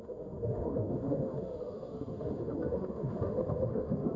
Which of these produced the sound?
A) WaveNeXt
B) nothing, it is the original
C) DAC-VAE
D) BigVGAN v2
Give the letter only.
C